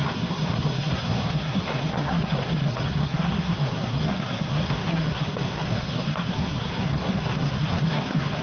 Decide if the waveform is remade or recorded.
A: remade